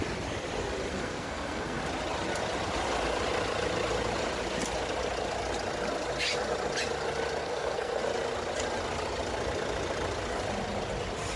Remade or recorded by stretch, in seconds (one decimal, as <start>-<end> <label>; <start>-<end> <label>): 0.0-0.9 recorded; 0.9-1.8 remade; 1.8-7.4 recorded; 7.4-8.0 remade; 8.0-11.4 recorded